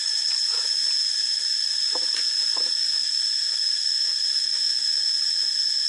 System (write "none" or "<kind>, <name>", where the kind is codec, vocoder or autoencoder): none